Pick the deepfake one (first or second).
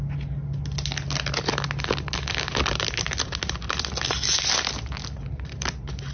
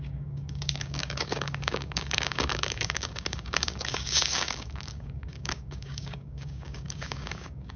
second